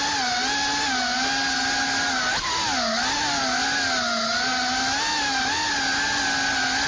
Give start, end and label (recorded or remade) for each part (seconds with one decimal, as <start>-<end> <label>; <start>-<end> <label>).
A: 0.0-6.9 recorded